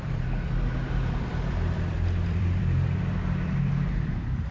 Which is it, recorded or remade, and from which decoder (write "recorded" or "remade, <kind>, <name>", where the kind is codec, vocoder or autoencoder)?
remade, vocoder, BigVGAN v2